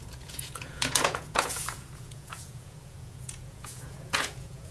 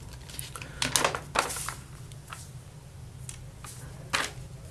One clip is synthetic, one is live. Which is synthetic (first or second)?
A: first